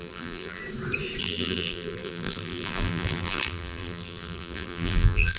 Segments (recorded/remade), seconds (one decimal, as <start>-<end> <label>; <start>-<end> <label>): 0.0-0.6 remade; 0.6-1.2 recorded; 1.2-5.4 remade